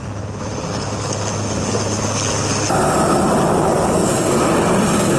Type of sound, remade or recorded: recorded